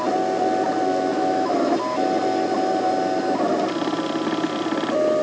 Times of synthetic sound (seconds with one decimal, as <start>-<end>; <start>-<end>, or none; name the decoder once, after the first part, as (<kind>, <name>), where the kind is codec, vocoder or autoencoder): 1.1-1.7 (autoencoder, DAC-VAE)